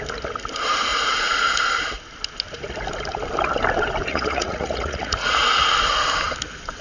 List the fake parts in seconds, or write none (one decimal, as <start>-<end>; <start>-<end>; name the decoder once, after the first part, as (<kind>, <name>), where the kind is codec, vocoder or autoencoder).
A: 0.9-1.5 (vocoder, Vocos); 4.1-5.3